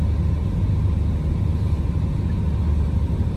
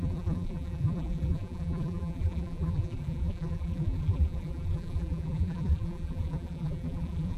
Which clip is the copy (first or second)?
second